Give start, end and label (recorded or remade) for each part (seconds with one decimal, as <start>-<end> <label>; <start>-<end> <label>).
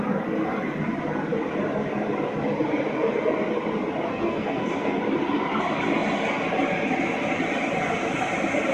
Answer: 0.0-4.1 recorded; 4.1-5.0 remade; 5.0-8.7 recorded